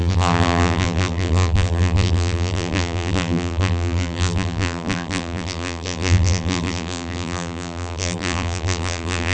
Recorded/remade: remade